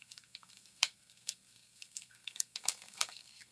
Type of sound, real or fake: fake